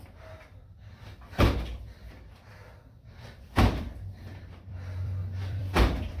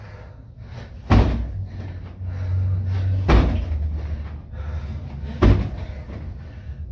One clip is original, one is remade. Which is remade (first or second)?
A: first